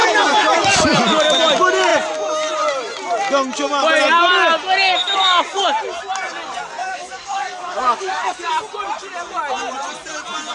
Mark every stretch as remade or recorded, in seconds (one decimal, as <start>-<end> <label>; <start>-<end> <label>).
0.0-6.8 recorded; 6.8-8.5 remade; 8.5-10.5 recorded